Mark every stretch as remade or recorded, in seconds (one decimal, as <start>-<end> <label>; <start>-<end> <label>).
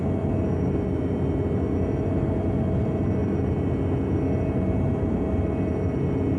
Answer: 0.0-6.4 recorded